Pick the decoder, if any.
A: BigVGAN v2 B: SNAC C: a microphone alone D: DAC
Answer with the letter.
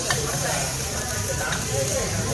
A